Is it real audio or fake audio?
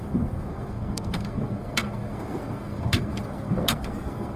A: fake